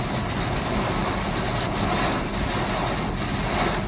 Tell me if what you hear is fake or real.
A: real